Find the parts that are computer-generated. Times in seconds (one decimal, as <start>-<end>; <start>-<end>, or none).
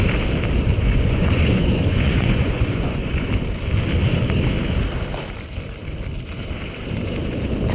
0.8-3.3